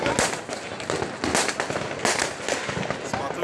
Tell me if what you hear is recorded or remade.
recorded